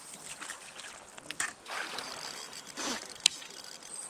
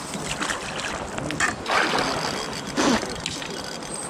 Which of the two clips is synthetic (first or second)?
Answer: first